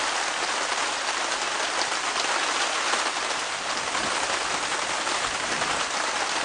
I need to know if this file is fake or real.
real